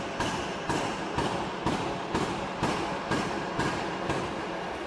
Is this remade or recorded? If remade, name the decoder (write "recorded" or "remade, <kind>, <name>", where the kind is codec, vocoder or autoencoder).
recorded